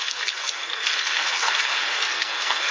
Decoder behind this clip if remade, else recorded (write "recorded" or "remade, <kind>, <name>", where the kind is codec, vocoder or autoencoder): remade, codec, SNAC